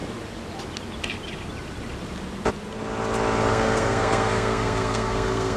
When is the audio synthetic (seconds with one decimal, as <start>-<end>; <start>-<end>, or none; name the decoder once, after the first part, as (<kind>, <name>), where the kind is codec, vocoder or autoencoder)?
3.5-5.6 (codec, SNAC)